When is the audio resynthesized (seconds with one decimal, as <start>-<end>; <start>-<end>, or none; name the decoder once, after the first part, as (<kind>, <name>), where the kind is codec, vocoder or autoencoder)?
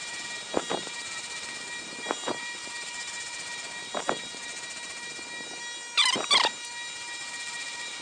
0.0-4.5 (vocoder, BigVGAN v2); 7.3-8.0